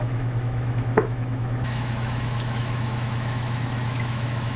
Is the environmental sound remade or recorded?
remade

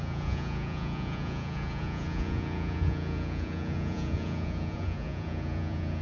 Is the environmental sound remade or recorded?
remade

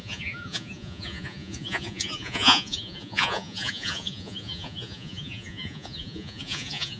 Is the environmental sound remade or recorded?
remade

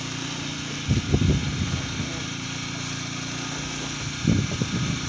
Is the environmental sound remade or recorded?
recorded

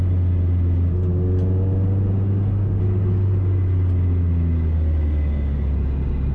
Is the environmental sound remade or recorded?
recorded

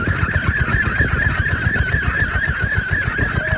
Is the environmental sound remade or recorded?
recorded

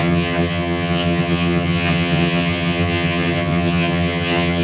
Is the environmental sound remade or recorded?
remade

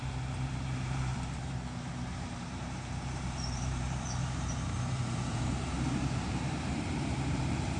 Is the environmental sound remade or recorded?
remade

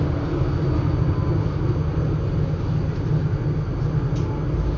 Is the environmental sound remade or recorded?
recorded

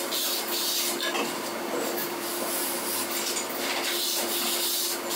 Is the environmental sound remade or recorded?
recorded